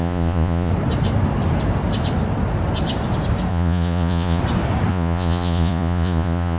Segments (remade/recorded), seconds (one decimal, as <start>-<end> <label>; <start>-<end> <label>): 0.0-0.7 remade; 0.7-3.5 recorded; 3.5-4.4 remade; 4.4-4.9 recorded; 4.9-6.6 remade